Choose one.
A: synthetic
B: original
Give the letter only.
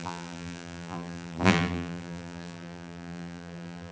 A